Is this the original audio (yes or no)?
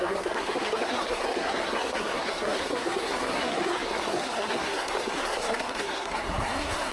no